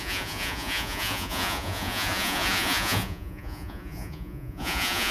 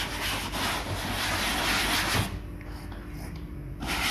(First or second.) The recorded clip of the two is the second